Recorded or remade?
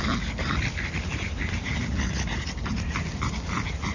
recorded